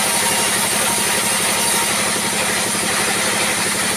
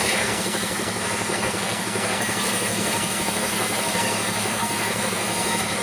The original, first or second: first